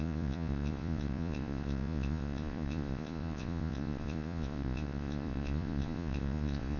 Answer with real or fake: fake